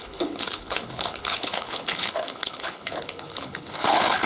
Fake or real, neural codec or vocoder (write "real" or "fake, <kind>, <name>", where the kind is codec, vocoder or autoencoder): fake, codec, HILCodec